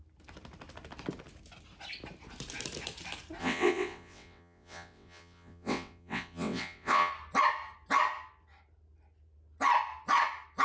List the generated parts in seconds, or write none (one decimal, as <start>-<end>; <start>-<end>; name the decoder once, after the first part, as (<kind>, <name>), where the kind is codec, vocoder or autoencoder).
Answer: 3.4-7.1 (vocoder, WaveNeXt)

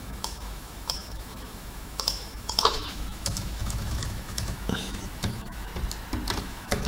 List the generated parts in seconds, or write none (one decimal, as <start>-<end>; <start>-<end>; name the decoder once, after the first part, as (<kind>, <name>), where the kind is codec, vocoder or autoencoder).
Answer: 0.0-5.7 (autoencoder, DAC-VAE); 6.4-6.9

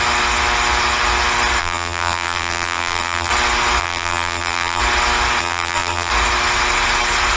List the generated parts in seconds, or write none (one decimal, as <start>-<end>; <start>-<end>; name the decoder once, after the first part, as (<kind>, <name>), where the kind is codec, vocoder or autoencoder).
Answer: 1.6-3.3 (vocoder, BigVGAN v2); 3.8-4.8; 5.4-6.1

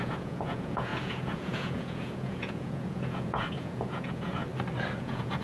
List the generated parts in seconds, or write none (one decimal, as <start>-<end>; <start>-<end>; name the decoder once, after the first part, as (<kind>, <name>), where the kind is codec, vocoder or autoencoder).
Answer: 0.0-4.5 (vocoder, Vocos); 5.0-5.4

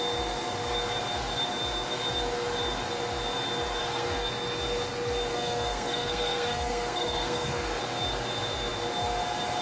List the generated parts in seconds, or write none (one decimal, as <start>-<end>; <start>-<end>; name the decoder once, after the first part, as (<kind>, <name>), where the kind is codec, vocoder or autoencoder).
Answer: 3.8-4.3 (codec, SNAC); 5.3-7.8

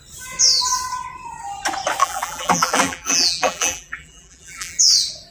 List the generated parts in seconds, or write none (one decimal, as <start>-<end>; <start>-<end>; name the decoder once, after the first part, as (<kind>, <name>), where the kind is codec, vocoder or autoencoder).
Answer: 2.0-4.8 (vocoder, BigVGAN v2)